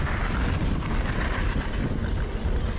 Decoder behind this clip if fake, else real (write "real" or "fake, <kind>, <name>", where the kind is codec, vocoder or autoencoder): real